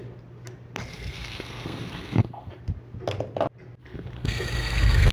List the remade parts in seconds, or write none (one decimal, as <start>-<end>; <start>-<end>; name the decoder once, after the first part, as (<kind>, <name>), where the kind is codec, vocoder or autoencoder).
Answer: 0.9-2.6 (codec, SNAC); 3.8-5.1